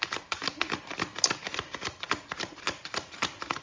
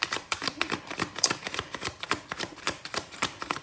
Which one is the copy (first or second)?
second